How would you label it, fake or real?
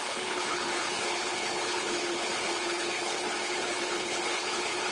fake